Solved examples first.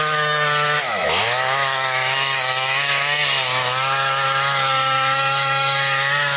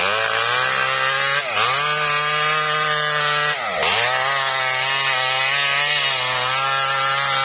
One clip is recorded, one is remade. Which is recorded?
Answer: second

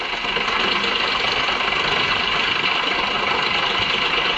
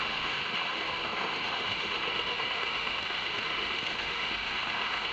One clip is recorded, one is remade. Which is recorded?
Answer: first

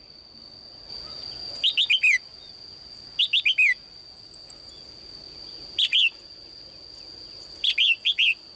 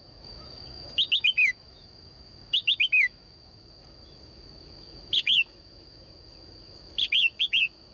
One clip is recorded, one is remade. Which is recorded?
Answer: first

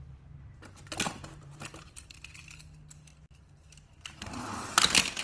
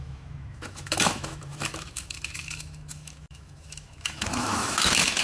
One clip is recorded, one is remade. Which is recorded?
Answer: first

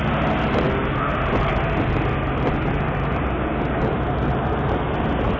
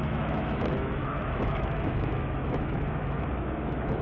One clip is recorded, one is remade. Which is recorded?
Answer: first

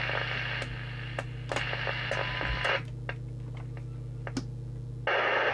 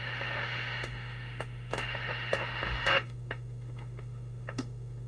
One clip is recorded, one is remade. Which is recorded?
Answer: first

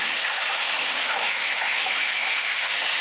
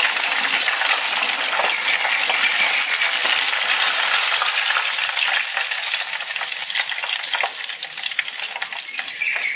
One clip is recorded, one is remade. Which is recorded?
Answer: second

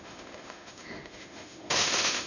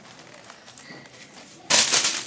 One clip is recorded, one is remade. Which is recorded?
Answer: second